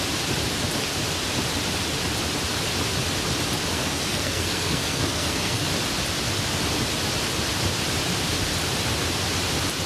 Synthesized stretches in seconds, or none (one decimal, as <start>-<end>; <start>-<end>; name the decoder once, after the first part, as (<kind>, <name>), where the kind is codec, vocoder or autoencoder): 3.7-5.6 (codec, SNAC)